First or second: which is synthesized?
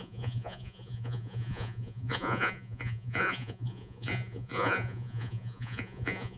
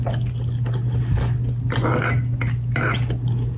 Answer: first